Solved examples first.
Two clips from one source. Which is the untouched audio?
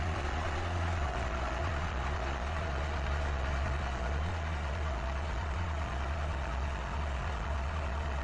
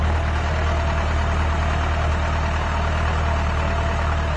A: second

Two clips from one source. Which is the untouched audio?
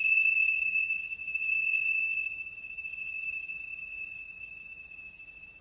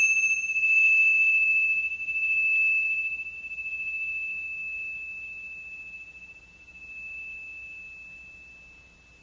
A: second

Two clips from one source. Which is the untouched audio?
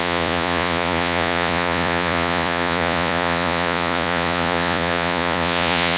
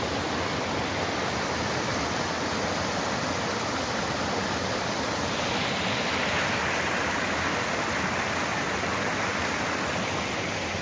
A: second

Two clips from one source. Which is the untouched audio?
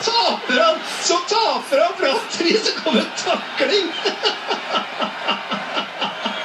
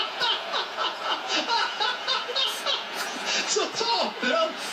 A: first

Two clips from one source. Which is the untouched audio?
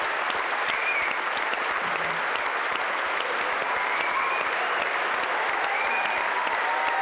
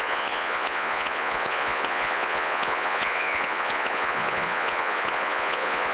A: first